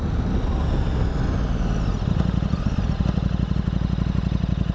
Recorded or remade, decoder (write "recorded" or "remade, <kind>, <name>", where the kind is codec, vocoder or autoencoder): recorded